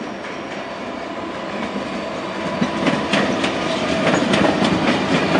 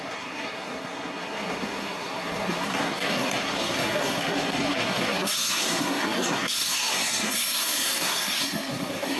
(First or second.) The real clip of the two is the first